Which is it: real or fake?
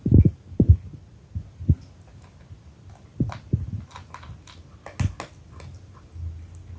real